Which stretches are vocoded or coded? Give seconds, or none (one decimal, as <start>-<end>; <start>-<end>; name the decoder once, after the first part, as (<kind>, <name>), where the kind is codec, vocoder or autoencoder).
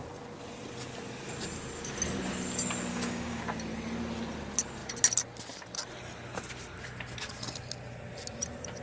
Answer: 2.9-3.4 (codec, DAC)